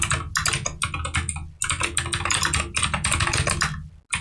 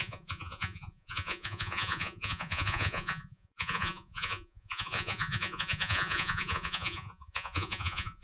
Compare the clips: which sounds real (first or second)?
first